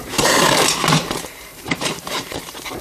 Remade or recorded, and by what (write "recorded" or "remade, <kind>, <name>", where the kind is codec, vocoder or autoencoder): remade, vocoder, BigVGAN v2